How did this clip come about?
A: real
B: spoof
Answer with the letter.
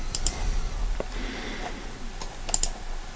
A